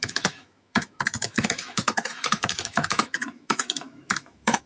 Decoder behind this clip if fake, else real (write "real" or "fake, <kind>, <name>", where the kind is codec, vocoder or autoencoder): fake, autoencoder, DAC-VAE